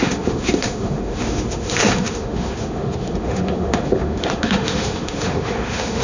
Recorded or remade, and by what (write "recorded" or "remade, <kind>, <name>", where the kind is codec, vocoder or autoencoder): remade, autoencoder, DAC-VAE